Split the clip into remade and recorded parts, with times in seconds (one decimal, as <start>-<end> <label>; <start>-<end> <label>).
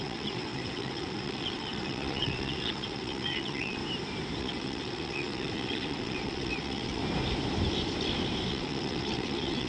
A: 0.0-3.8 remade; 3.8-4.4 recorded; 4.4-7.0 remade; 7.0-8.5 recorded; 8.5-9.7 remade